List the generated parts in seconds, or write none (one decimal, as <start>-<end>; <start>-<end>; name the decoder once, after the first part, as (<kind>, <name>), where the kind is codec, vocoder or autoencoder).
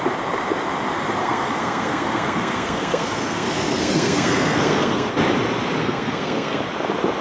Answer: 1.2-5.1 (codec, SNAC); 5.8-6.6